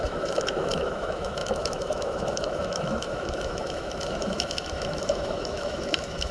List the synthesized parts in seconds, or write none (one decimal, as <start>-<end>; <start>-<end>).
0.0-6.3